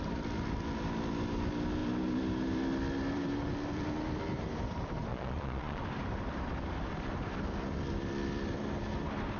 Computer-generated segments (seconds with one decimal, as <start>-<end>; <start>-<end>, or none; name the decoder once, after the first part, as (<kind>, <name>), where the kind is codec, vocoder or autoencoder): 5.1-5.8 (vocoder, Vocos)